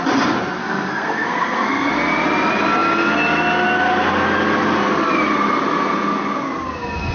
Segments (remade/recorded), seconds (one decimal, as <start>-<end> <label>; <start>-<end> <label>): 0.0-0.6 recorded; 0.6-1.9 remade; 1.9-7.1 recorded